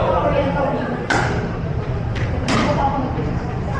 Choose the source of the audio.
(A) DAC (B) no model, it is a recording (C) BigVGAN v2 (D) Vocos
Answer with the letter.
C